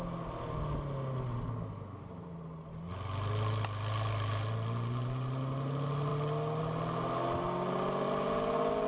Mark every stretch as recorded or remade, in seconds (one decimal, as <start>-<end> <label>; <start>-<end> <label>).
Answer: 0.0-8.9 recorded